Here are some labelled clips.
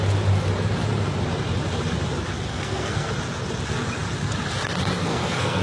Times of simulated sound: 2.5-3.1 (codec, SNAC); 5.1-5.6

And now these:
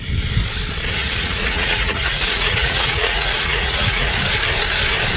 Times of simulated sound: 1.0-4.1 (vocoder, Vocos)

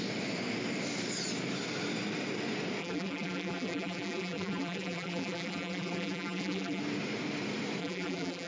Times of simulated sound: 2.8-6.8 (vocoder, BigVGAN v2); 7.8-8.5

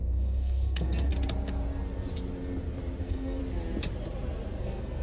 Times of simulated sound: 0.0-1.1 (codec, SNAC); 3.0-3.4; 4.6-5.0

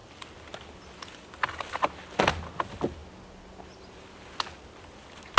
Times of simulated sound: none